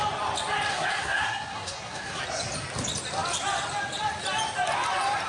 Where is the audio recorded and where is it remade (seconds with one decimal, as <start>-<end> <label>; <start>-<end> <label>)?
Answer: 0.0-0.7 recorded; 0.7-2.2 remade; 2.2-5.3 recorded

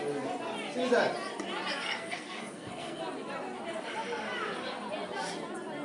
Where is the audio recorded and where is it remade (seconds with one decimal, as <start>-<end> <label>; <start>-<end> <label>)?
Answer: 0.0-1.7 recorded; 1.7-3.0 remade; 3.0-5.8 recorded

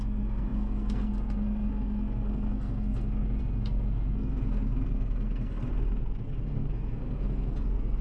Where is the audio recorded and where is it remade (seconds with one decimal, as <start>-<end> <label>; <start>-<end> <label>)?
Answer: 0.0-8.0 remade

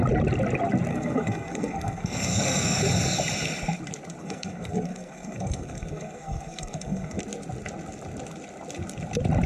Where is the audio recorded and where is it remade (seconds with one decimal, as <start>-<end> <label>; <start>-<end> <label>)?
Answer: 0.0-0.9 recorded; 0.9-2.8 remade; 2.8-4.2 recorded; 4.2-7.2 remade; 7.2-9.5 recorded

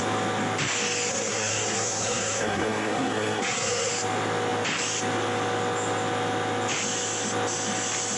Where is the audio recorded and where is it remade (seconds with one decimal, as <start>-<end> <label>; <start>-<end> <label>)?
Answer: 0.0-1.1 recorded; 1.1-3.9 remade; 3.9-8.2 recorded

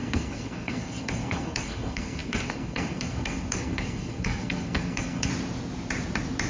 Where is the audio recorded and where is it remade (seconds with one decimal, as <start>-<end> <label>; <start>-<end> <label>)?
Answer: 0.0-5.3 remade; 5.3-6.5 recorded

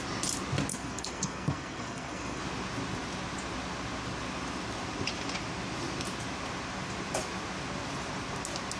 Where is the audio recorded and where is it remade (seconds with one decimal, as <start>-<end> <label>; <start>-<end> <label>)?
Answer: 0.0-0.7 recorded; 0.7-2.4 remade; 2.4-8.8 recorded

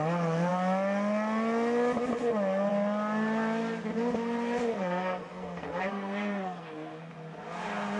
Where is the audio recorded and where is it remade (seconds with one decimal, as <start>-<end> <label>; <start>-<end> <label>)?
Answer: 0.0-4.7 recorded; 4.7-7.1 remade; 7.1-8.0 recorded